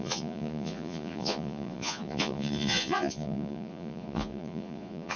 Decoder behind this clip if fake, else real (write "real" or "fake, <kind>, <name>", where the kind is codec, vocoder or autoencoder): fake, vocoder, Vocos